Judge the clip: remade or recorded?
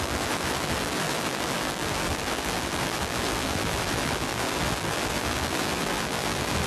remade